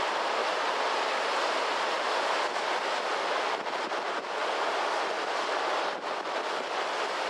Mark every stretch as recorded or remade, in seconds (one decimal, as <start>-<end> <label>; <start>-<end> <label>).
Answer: 0.0-0.4 remade; 0.4-3.1 recorded; 3.1-4.4 remade; 4.4-5.1 recorded; 5.1-7.3 remade